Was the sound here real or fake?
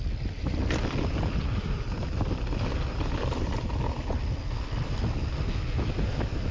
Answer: real